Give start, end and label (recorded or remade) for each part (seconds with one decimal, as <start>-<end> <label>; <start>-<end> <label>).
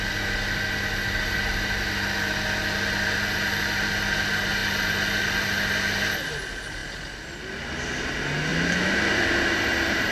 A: 0.0-8.5 recorded; 8.5-9.2 remade; 9.2-10.1 recorded